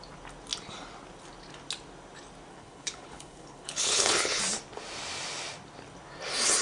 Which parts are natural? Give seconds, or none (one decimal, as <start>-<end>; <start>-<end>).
0.0-2.5; 4.4-6.6

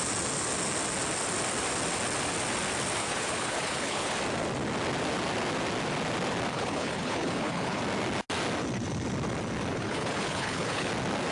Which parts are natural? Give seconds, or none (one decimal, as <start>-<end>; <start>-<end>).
0.0-3.0; 4.1-6.5; 7.8-9.7; 10.9-11.3

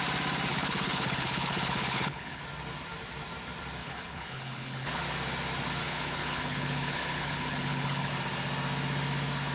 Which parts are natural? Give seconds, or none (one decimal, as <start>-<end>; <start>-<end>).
0.0-0.5; 2.4-3.8; 5.0-5.8; 8.1-9.5

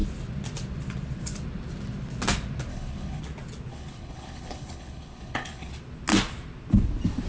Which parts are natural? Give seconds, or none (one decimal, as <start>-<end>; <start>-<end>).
0.0-2.7; 3.2-3.7; 5.7-7.3

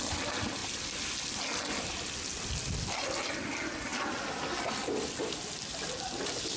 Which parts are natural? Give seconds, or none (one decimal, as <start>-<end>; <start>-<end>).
0.0-6.6